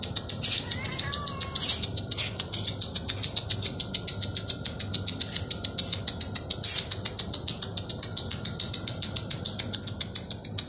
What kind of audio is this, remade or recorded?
recorded